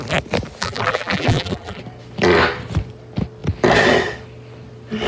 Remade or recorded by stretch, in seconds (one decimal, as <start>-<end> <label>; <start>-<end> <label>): 0.0-0.6 recorded; 0.6-1.8 remade; 1.8-5.1 recorded